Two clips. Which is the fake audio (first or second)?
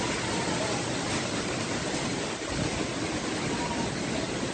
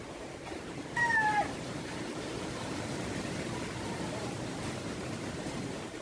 second